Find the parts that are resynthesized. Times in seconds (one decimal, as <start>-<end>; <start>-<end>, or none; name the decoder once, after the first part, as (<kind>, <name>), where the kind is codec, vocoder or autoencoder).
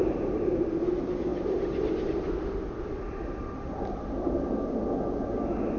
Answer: none